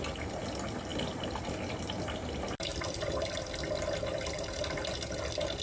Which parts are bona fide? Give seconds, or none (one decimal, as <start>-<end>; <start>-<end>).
0.0-0.9; 1.7-2.7; 3.8-5.6